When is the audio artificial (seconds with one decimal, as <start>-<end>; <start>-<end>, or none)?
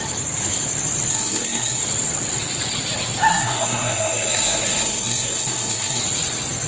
1.1-1.8; 3.3-6.0